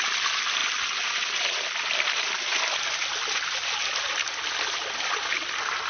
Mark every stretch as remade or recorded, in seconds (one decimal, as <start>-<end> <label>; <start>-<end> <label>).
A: 0.0-5.9 recorded